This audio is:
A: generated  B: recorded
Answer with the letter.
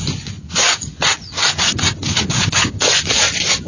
A